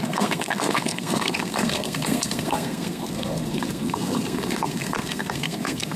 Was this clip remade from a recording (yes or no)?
yes